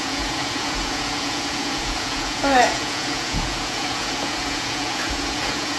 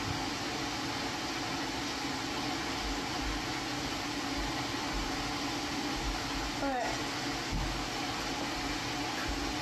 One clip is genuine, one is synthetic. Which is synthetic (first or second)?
first